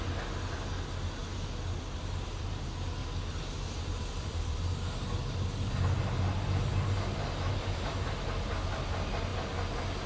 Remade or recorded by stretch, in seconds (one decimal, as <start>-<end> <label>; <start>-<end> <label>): 0.0-1.2 recorded; 1.2-2.5 remade; 2.5-3.0 recorded; 3.0-4.6 remade; 4.6-10.1 recorded